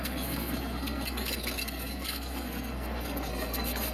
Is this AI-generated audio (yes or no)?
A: yes